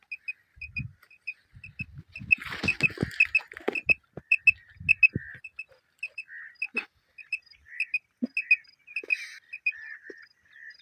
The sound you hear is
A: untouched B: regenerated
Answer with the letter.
A